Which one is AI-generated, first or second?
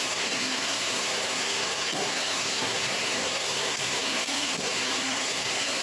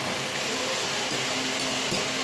first